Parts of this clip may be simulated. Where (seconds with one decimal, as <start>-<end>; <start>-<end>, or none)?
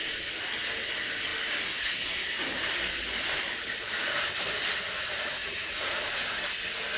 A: 5.4-6.0